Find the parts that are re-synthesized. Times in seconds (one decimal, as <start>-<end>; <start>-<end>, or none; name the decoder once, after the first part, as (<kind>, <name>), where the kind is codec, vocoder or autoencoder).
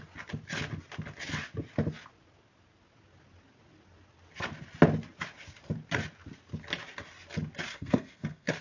7.7-8.6 (codec, SNAC)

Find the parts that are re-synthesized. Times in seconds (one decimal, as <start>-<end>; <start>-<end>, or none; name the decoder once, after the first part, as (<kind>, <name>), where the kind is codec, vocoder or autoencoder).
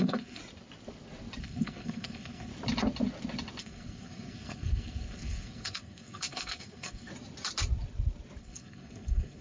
0.0-0.4 (codec, SNAC); 1.4-2.5; 3.6-7.1; 8.4-9.4